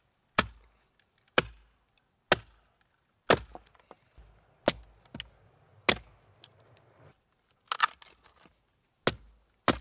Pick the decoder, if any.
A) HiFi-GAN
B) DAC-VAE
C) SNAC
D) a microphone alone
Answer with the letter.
D